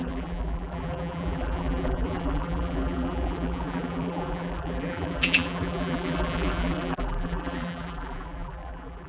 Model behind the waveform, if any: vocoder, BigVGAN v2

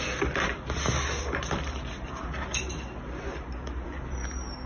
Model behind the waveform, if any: none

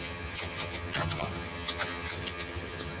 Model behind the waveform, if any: vocoder, HiFi-GAN